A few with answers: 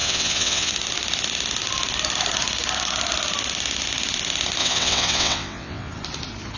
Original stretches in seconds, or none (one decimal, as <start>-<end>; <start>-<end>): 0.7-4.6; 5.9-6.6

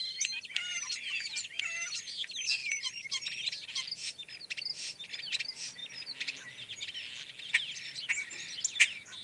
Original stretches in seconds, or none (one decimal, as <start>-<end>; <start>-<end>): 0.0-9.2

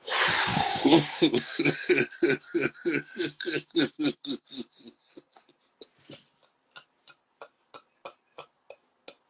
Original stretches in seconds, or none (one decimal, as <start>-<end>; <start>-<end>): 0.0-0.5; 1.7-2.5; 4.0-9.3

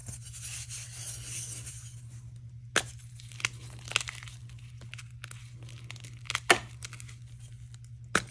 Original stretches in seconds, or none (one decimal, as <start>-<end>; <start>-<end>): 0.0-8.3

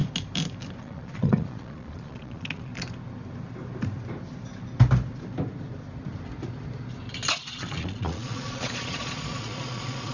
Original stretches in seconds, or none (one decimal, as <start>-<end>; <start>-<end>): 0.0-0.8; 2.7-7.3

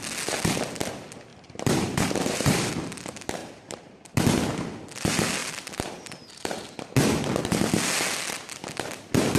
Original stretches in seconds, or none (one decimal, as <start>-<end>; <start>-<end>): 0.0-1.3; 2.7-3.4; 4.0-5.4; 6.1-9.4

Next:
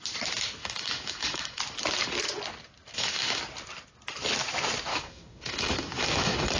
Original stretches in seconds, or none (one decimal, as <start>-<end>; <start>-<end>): 0.0-0.6; 1.6-2.9; 3.4-4.9

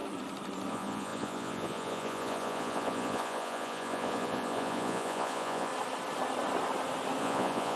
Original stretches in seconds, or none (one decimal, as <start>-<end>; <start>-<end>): 0.0-0.7; 5.7-7.2